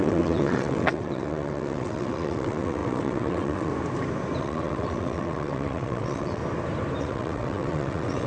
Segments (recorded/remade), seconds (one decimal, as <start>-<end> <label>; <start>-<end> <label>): 0.0-3.7 remade; 3.7-4.4 recorded; 4.4-6.4 remade; 6.4-7.0 recorded; 7.0-8.3 remade